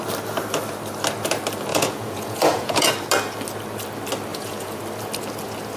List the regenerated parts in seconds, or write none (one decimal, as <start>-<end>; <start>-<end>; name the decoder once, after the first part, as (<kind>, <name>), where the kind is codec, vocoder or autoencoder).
1.7-2.9 (vocoder, Vocos); 4.3-4.8